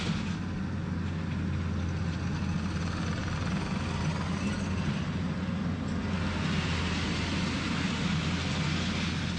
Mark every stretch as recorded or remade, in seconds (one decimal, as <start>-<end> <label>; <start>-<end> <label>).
0.0-9.4 recorded